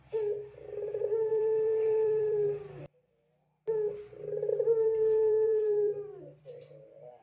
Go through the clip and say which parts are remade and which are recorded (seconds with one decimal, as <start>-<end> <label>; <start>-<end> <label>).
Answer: 0.0-1.3 recorded; 1.3-3.2 remade; 3.2-4.5 recorded; 4.5-6.4 remade; 6.4-7.2 recorded